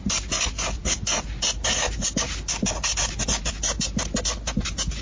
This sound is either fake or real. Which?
real